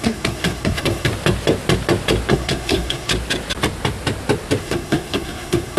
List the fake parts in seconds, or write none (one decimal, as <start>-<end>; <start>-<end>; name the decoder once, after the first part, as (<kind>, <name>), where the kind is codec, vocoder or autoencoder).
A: 0.0-1.1 (codec, SNAC); 2.3-3.1; 4.6-5.8